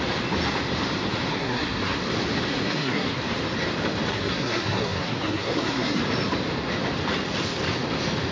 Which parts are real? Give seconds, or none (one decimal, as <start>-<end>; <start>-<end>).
0.0-1.3; 2.0-2.5; 3.2-4.1; 6.0-8.3